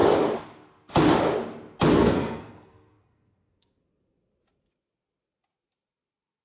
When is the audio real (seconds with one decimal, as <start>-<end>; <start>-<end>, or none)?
0.0-2.0; 3.8-6.4